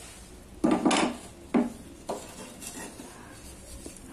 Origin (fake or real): real